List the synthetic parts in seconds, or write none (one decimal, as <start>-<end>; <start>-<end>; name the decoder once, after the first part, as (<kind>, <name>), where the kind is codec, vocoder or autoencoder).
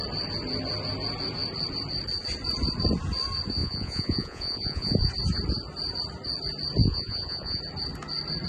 3.6-5.1 (vocoder, Vocos); 6.8-7.6